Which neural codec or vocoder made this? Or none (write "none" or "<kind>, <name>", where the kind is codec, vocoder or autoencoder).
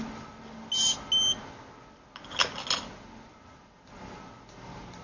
none